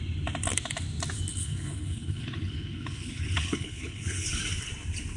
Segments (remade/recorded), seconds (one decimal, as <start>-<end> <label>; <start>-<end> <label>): 0.0-1.3 recorded; 1.3-4.4 remade; 4.4-5.2 recorded